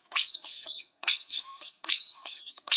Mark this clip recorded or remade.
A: remade